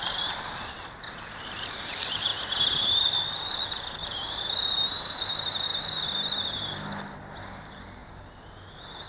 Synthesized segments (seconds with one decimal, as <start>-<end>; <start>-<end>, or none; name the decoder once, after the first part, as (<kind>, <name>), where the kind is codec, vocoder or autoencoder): 0.0-2.3 (vocoder, BigVGAN v2); 4.0-5.7; 7.5-8.0; 8.7-9.1